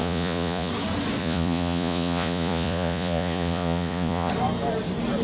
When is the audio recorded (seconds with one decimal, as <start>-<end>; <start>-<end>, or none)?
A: 0.7-1.2; 4.3-5.2